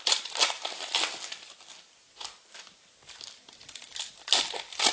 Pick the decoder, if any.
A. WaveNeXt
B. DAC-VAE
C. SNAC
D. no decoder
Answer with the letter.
D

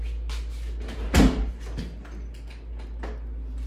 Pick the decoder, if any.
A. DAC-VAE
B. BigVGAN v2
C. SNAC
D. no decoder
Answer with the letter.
D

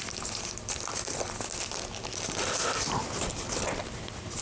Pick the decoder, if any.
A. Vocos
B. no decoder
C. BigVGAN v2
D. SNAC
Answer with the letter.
C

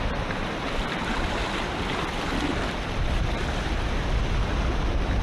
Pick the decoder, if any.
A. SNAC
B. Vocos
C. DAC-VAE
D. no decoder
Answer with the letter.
D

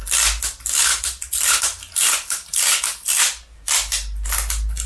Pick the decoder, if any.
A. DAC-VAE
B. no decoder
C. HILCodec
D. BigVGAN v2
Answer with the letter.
B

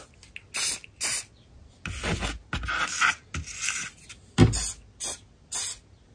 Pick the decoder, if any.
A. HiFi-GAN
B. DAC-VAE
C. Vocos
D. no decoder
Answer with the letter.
D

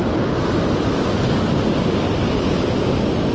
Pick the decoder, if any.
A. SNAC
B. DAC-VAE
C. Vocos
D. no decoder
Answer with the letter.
D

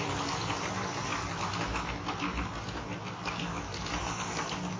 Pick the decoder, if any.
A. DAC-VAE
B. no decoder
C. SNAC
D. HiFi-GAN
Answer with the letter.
B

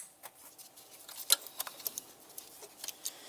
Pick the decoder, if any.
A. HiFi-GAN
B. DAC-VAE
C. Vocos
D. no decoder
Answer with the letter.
D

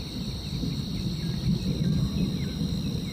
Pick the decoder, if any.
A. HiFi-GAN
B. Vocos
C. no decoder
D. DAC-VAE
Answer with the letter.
C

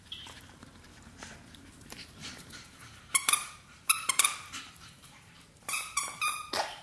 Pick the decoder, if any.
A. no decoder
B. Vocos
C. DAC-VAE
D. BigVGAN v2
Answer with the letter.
D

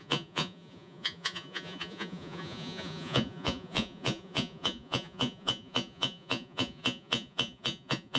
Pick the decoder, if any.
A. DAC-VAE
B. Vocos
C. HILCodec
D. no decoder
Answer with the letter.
B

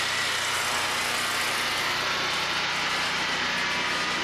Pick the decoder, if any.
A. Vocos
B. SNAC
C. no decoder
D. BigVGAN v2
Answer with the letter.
C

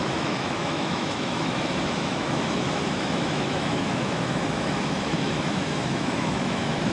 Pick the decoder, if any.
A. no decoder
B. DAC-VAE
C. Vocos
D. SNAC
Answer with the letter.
B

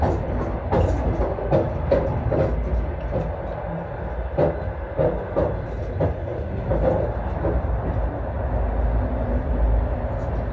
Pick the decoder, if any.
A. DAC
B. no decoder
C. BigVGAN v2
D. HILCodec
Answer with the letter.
B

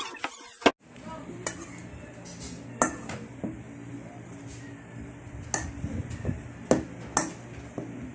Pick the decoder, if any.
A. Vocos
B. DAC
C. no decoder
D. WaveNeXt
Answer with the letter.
C